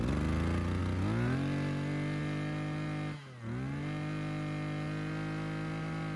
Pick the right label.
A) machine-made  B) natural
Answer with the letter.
B